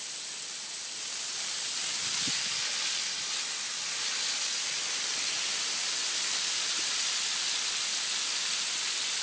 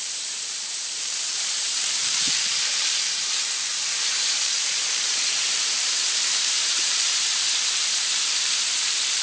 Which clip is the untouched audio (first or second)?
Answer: first